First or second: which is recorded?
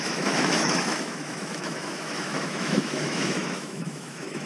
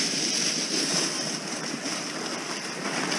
second